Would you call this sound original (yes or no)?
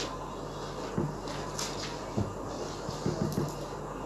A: yes